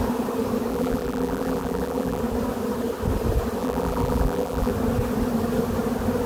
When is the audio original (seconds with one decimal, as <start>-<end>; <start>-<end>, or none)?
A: 0.0-0.7; 2.2-3.6; 4.7-6.3